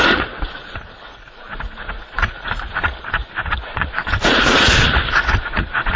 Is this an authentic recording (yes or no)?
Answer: no